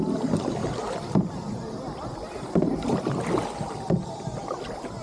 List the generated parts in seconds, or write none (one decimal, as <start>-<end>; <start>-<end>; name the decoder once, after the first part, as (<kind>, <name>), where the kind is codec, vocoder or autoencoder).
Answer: none